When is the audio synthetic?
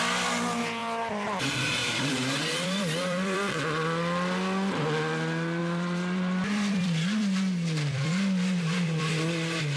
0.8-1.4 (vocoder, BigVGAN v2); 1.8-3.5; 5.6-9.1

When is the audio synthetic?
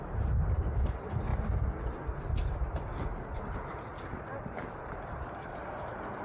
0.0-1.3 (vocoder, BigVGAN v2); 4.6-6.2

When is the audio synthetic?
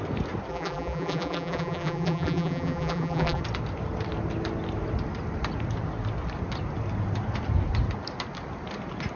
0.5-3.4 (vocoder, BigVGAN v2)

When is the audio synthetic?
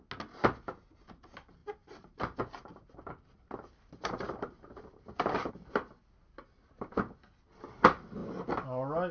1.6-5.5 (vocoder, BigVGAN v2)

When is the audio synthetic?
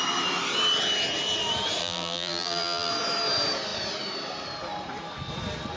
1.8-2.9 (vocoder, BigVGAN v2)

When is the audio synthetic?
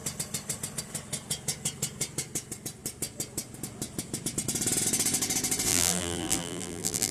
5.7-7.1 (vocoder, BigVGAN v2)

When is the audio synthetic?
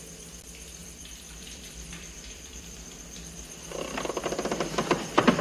0.8-3.8 (vocoder, BigVGAN v2)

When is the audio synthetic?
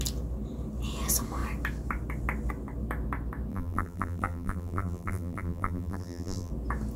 3.5-6.5 (vocoder, BigVGAN v2)